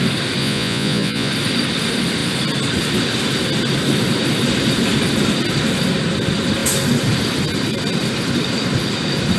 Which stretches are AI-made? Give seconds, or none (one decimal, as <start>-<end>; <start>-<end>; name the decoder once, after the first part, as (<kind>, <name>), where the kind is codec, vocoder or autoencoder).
0.4-1.3 (vocoder, Vocos)